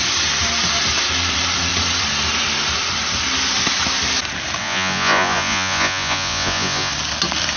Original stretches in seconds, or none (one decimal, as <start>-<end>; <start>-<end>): 0.0-4.6; 6.9-7.6